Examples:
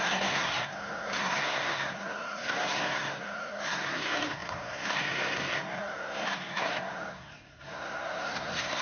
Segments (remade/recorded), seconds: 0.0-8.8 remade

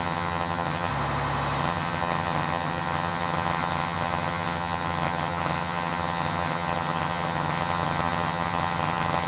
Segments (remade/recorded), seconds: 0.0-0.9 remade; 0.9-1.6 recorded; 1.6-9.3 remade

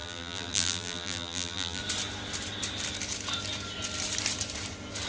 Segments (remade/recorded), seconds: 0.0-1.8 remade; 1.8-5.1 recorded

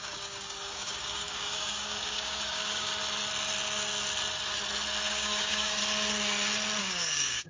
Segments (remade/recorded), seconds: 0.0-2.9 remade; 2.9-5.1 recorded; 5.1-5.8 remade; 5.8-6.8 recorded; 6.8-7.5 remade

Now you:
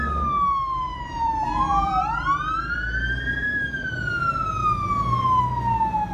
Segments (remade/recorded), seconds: 0.0-0.8 recorded; 0.8-3.9 remade; 3.9-6.1 recorded

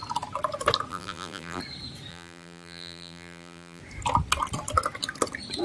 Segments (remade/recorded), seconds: 0.0-0.9 recorded; 0.9-1.6 remade; 1.6-2.1 recorded; 2.1-3.8 remade; 3.8-5.6 recorded

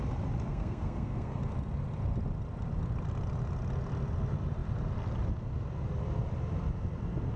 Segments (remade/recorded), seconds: 0.0-0.5 recorded; 0.5-1.4 remade; 1.4-7.4 recorded